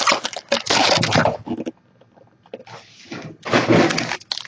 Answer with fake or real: real